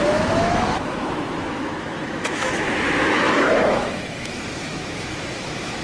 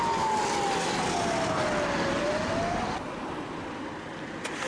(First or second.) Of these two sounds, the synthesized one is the first